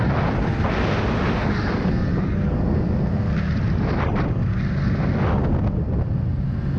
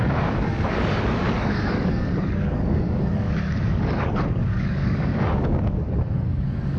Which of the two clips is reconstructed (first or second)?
second